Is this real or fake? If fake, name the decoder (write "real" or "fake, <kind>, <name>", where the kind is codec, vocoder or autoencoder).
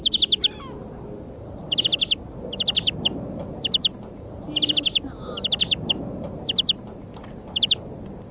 real